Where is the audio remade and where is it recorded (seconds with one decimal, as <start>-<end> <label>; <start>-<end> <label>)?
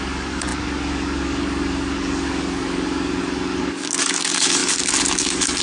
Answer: 0.0-5.6 remade